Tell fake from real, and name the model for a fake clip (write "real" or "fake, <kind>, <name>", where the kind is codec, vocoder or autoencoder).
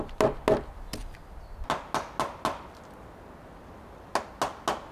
real